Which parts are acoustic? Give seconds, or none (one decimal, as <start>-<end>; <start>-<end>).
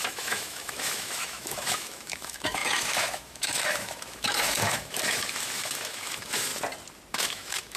6.5-7.1